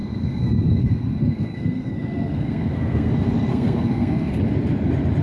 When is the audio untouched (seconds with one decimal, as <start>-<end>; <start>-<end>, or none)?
3.1-3.5; 4.4-5.2